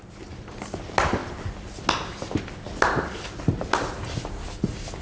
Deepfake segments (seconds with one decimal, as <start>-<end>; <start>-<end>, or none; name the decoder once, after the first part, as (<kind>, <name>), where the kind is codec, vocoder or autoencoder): none

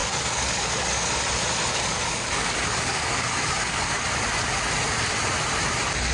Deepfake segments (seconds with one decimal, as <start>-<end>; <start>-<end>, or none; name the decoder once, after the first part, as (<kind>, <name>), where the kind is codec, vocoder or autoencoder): 0.0-1.1 (codec, DAC); 1.7-4.1